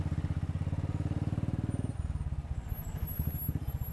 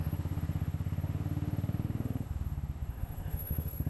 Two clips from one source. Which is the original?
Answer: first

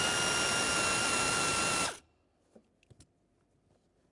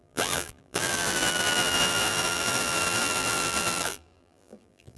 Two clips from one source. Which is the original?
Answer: first